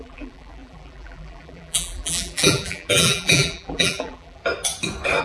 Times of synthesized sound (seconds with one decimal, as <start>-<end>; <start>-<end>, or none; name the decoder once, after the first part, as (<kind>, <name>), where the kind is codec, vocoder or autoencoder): 0.0-4.4 (vocoder, BigVGAN v2)